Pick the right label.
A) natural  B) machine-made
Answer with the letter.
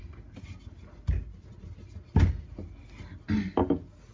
A